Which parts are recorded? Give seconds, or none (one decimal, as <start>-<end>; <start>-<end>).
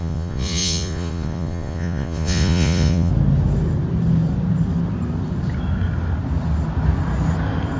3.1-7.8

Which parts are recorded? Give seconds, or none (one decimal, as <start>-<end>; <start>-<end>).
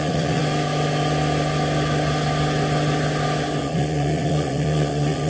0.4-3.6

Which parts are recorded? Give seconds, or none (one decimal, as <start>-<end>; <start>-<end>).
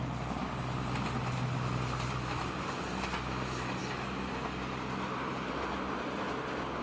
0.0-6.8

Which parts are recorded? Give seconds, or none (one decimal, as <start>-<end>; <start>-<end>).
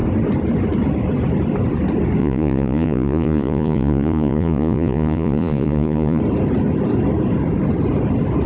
0.0-2.2; 6.2-8.5